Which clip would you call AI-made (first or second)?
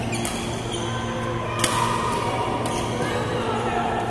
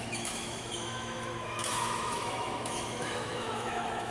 second